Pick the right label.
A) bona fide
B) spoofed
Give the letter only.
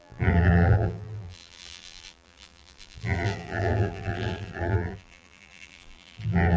B